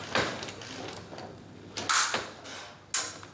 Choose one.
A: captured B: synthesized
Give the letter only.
A